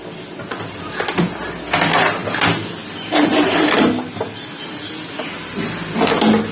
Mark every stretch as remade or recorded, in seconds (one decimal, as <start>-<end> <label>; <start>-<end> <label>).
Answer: 0.0-6.5 recorded